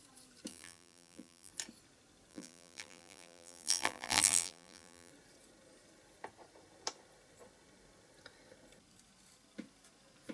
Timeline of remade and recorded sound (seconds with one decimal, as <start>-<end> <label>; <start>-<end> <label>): 0.0-0.5 recorded; 0.5-1.5 remade; 1.5-2.3 recorded; 2.3-5.1 remade; 5.1-10.3 recorded